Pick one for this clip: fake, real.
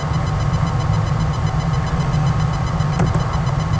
real